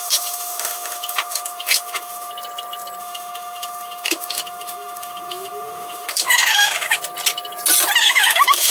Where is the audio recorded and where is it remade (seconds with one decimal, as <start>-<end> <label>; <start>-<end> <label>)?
0.0-2.3 remade; 2.3-3.0 recorded; 3.0-7.0 remade; 7.0-8.0 recorded; 8.0-8.7 remade